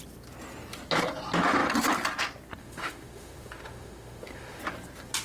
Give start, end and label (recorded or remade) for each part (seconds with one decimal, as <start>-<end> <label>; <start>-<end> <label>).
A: 0.0-2.6 recorded; 2.6-4.6 remade; 4.6-5.2 recorded